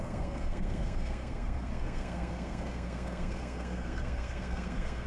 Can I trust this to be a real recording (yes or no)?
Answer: no